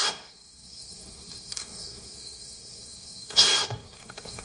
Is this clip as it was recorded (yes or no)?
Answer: no